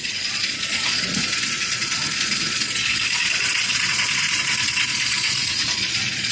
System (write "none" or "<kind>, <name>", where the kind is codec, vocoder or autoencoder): vocoder, Vocos